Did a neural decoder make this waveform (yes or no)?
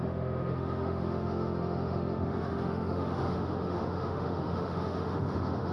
yes